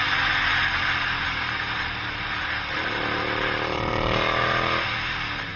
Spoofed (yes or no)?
no